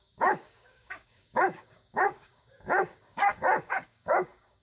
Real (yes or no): no